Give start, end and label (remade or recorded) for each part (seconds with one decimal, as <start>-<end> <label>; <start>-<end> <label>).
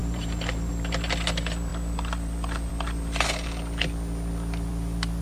0.0-0.7 remade; 0.7-5.2 recorded